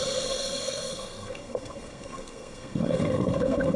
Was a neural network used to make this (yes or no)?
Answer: yes